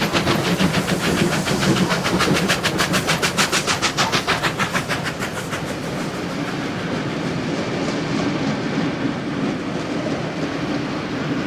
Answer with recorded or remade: recorded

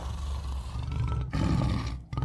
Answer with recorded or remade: recorded